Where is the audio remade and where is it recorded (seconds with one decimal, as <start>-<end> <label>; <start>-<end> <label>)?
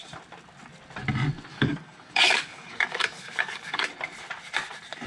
0.0-1.5 recorded; 1.5-3.9 remade; 3.9-5.1 recorded